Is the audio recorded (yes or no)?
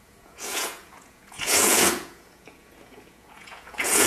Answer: no